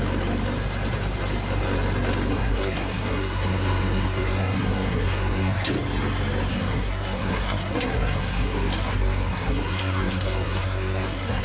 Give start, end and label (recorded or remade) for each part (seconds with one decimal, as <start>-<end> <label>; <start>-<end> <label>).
0.0-2.3 recorded; 2.3-5.7 remade; 5.7-6.5 recorded; 6.5-11.4 remade